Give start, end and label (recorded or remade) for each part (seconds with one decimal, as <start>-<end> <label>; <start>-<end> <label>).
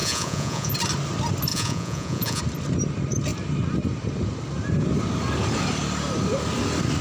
0.0-0.7 remade; 0.7-1.5 recorded; 1.5-2.4 remade; 2.4-7.0 recorded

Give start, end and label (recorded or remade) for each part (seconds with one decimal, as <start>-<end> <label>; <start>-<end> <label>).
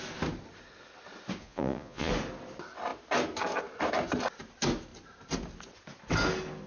0.0-1.4 recorded; 1.4-2.1 remade; 2.1-6.7 recorded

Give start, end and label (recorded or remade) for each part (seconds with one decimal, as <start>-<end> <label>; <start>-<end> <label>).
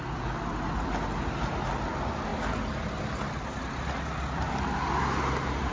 0.0-5.7 recorded